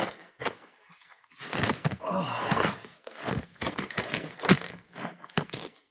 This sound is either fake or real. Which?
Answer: fake